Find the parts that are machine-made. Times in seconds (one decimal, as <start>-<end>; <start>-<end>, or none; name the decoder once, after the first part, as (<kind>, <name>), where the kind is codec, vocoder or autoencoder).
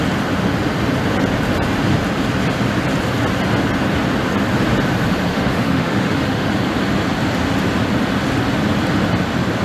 5.3-6.5 (autoencoder, DAC-VAE)